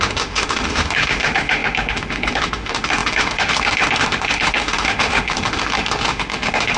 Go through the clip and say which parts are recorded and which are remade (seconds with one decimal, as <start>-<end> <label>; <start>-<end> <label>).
0.0-6.8 remade